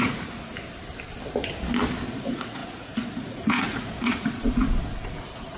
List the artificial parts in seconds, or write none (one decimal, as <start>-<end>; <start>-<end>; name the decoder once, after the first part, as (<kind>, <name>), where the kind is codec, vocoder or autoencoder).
0.0-0.5 (vocoder, Vocos); 2.1-5.6